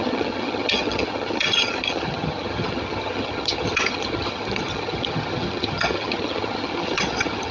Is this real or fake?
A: fake